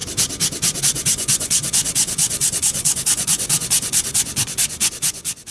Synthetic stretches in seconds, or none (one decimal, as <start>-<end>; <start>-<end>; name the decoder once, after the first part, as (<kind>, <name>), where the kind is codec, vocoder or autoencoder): 0.8-5.5 (vocoder, Vocos)